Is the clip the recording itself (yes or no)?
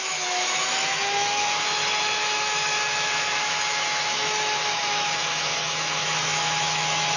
no